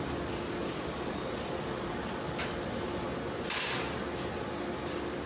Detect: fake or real real